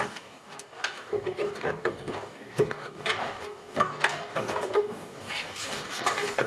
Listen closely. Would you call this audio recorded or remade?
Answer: remade